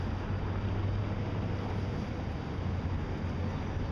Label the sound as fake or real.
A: real